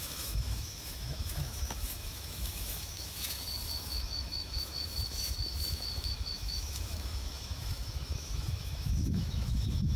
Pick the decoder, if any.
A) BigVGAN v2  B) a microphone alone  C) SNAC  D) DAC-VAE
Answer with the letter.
D